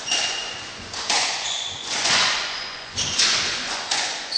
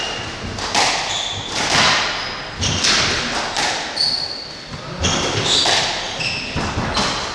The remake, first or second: first